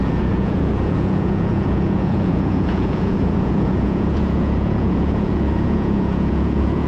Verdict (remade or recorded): remade